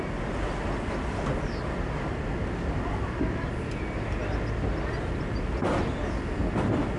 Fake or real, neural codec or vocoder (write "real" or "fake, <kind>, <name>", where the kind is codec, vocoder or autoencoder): real